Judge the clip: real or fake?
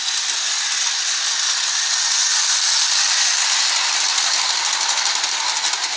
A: real